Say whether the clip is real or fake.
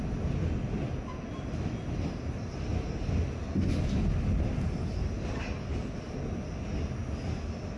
real